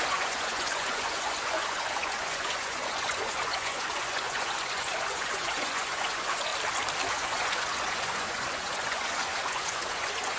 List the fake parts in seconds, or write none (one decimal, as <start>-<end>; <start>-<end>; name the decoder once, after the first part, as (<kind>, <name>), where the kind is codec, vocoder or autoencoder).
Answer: 0.0-6.5 (vocoder, Vocos); 7.1-10.4